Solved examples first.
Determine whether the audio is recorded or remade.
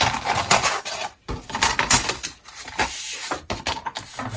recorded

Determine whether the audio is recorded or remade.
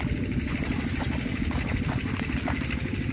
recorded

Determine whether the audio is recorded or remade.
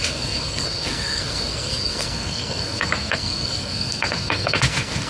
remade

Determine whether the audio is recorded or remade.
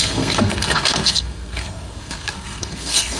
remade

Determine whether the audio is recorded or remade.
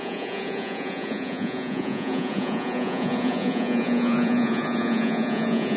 remade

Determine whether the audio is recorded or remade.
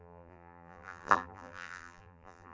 remade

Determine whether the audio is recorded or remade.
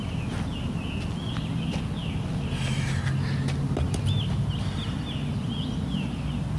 recorded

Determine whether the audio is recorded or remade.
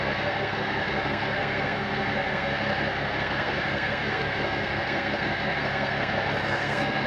remade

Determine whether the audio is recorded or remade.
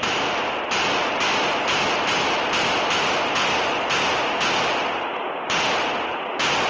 recorded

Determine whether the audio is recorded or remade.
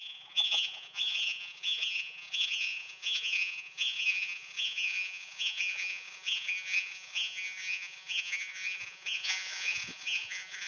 remade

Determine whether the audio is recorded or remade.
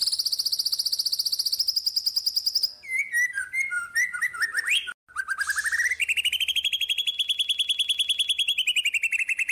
recorded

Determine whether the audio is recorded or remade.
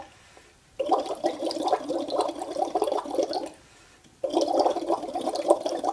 recorded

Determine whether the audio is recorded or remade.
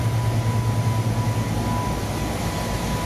recorded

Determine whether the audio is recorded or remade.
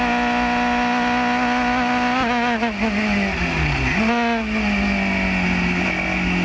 recorded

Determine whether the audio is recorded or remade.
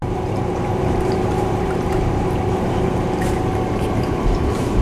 remade